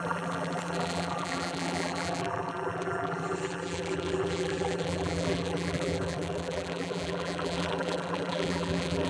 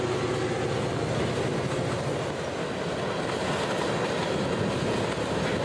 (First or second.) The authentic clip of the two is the second